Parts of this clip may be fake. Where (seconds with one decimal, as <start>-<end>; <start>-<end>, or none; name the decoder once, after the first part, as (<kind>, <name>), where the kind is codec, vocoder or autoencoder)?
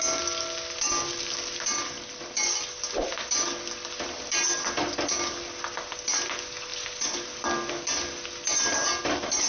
none